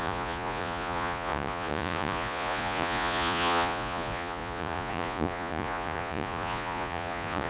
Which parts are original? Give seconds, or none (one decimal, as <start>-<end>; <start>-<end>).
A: none